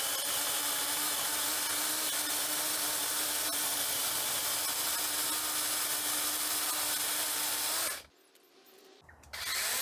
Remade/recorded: recorded